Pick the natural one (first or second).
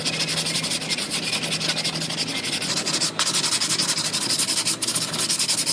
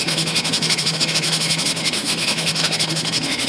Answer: first